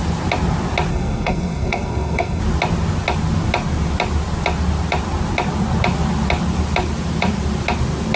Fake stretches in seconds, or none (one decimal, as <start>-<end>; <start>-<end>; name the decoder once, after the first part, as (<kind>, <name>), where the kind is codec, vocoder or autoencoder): 0.9-2.4 (codec, SNAC)